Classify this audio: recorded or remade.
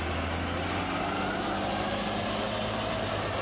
recorded